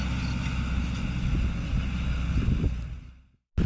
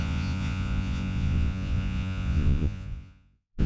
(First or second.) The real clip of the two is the first